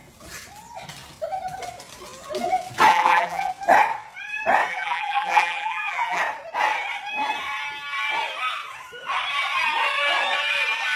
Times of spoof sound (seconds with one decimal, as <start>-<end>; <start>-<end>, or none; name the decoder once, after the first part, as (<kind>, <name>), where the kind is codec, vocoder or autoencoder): 2.9-3.5 (vocoder, BigVGAN v2); 4.7-6.2